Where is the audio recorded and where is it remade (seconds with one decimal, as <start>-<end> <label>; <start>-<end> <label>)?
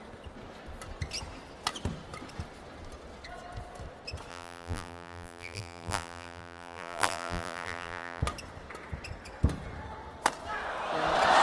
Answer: 0.0-4.3 recorded; 4.3-8.2 remade; 8.2-11.4 recorded